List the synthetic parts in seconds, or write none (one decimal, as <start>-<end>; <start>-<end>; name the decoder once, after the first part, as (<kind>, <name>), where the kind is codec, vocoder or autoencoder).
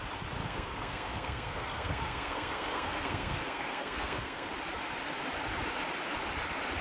0.4-4.5 (codec, SNAC)